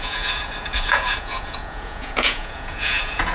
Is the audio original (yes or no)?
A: no